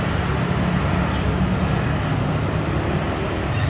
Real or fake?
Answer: real